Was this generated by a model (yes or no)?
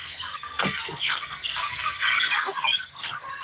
yes